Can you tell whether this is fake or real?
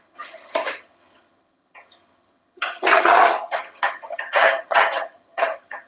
fake